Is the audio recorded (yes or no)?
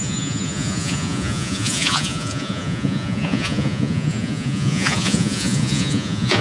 no